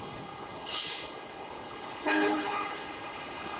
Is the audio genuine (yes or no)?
no